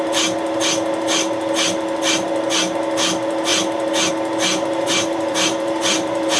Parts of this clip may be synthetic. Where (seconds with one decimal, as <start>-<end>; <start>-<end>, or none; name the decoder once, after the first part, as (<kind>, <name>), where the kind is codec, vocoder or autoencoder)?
4.5-6.4 (vocoder, BigVGAN v2)